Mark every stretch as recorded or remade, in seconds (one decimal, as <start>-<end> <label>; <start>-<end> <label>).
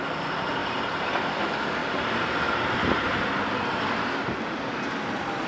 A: 0.0-5.5 recorded